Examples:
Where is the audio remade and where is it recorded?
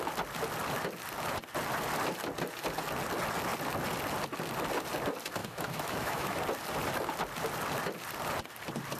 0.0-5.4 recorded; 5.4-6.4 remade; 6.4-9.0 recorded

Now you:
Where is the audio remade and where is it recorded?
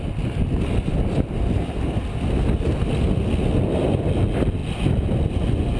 0.0-5.8 recorded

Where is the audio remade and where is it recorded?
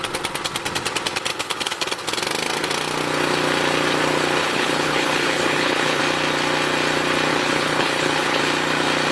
0.0-1.3 recorded; 1.3-2.0 remade; 2.0-4.4 recorded; 4.4-6.0 remade; 6.0-7.3 recorded; 7.3-8.4 remade; 8.4-9.1 recorded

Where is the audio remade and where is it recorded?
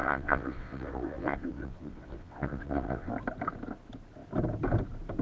0.0-3.1 remade; 3.1-5.2 recorded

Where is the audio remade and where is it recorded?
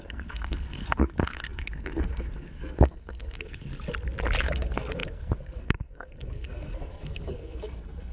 0.0-3.7 remade; 3.7-4.4 recorded; 4.4-8.1 remade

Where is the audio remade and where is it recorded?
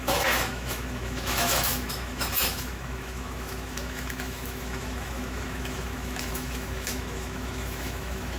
0.0-8.4 remade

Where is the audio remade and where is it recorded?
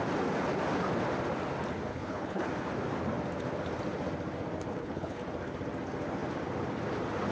0.0-1.9 recorded; 1.9-2.5 remade; 2.5-4.7 recorded; 4.7-5.2 remade; 5.2-7.3 recorded